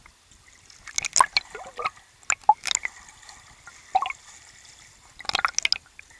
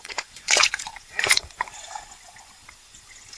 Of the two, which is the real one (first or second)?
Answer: first